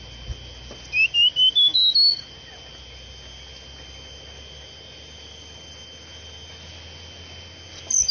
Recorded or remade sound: recorded